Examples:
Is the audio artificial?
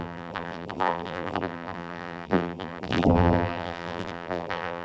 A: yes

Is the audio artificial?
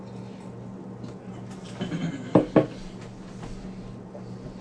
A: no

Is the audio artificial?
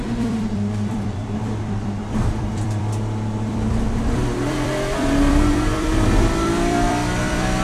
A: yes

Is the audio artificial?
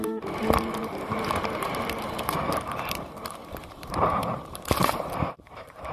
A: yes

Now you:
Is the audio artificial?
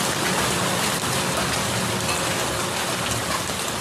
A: no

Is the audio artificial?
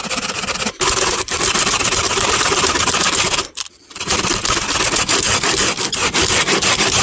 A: yes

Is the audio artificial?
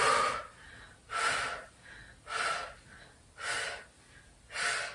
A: no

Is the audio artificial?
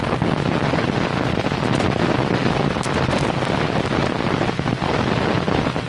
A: no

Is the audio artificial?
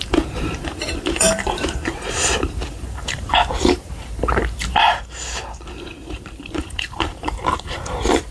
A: yes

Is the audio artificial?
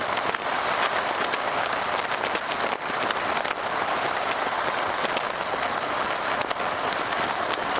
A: no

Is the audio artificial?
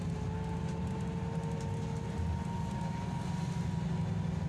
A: no